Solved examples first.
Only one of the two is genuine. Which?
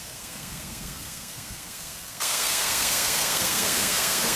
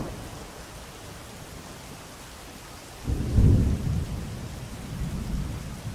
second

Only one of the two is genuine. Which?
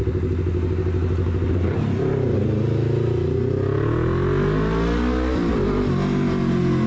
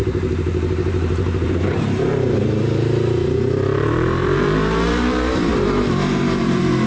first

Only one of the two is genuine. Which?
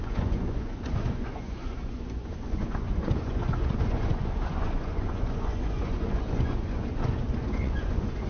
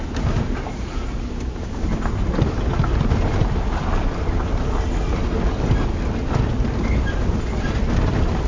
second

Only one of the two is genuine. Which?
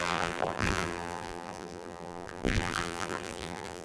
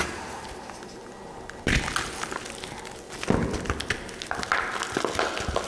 second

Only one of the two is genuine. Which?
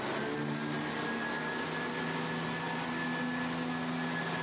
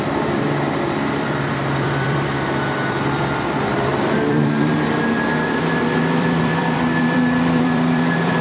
first